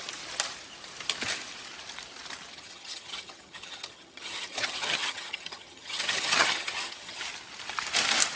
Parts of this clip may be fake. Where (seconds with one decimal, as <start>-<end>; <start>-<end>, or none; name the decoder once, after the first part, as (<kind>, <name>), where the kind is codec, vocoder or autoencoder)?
2.5-7.2 (vocoder, HiFi-GAN)